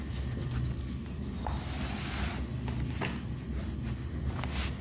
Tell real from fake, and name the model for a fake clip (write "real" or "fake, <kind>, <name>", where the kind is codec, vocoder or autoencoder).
real